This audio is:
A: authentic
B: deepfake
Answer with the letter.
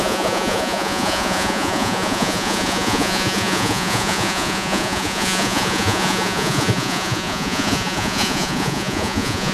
B